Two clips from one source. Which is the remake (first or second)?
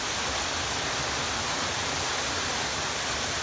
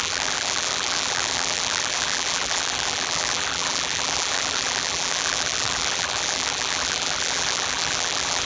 second